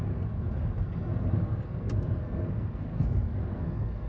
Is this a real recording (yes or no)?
no